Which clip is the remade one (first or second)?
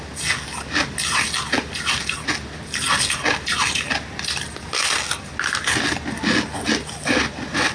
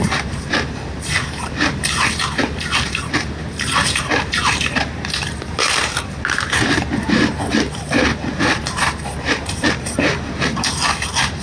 second